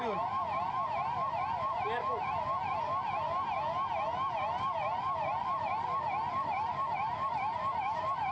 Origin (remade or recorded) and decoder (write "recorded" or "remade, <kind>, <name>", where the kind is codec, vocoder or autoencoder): recorded